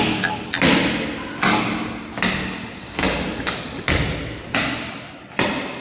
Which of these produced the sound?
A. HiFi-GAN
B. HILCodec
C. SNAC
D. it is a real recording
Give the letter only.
D